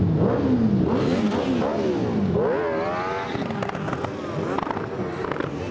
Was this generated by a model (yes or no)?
no